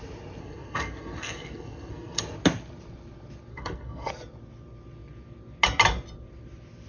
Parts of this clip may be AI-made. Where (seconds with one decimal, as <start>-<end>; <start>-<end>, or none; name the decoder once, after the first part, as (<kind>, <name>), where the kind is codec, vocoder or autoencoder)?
0.4-2.2 (codec, SNAC); 3.5-4.1